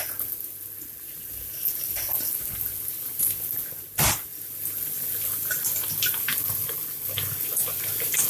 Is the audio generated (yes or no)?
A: no